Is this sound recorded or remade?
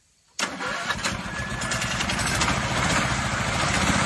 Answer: remade